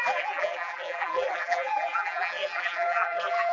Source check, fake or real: fake